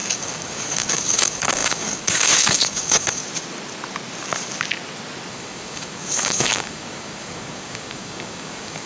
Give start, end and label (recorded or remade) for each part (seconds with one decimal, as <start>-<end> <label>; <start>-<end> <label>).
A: 0.0-3.2 remade; 3.2-5.3 recorded; 5.3-8.9 remade